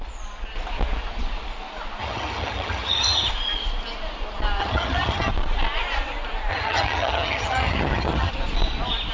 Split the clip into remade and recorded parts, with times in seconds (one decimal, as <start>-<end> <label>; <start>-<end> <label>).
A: 0.0-2.0 recorded; 2.0-3.3 remade; 3.3-4.6 recorded; 4.6-5.3 remade; 5.3-6.5 recorded; 6.5-8.3 remade; 8.3-9.1 recorded